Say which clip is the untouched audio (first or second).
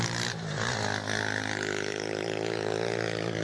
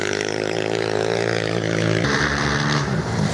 first